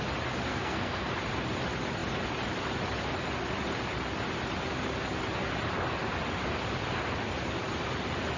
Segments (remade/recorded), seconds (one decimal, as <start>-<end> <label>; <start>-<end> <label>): 0.0-0.5 recorded; 0.5-1.1 remade; 1.1-8.4 recorded